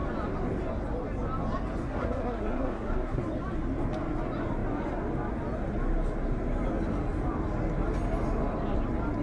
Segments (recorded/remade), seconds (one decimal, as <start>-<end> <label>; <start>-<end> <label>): 0.0-1.8 recorded; 1.8-3.2 remade; 3.2-9.2 recorded